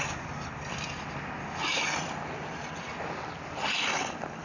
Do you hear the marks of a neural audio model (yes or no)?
no